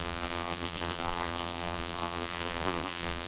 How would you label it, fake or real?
fake